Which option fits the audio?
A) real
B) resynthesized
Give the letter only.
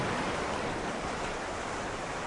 B